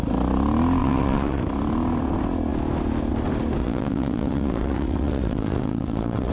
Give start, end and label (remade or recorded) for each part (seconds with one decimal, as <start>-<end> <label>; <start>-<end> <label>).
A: 0.0-0.8 recorded; 0.8-1.4 remade; 1.4-3.6 recorded; 3.6-6.3 remade